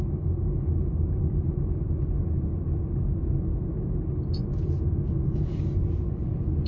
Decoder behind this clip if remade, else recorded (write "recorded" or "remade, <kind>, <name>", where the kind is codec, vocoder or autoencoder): recorded